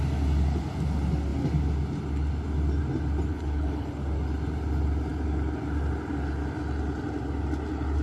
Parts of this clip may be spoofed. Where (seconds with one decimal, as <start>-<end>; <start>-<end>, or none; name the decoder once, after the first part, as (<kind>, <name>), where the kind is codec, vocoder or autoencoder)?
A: 3.3-3.9 (codec, HILCodec)